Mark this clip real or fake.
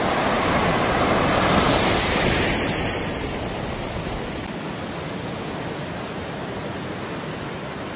real